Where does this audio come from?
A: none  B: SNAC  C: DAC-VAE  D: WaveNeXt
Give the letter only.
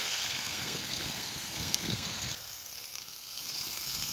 B